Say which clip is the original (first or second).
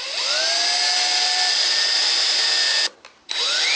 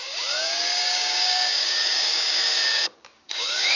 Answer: first